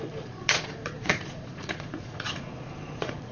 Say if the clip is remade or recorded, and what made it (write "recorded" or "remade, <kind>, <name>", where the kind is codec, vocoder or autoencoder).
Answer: remade, vocoder, Vocos